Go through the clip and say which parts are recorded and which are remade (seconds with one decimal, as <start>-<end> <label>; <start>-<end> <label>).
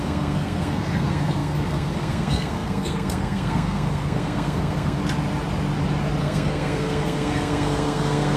0.0-5.0 remade; 5.0-6.2 recorded; 6.2-8.4 remade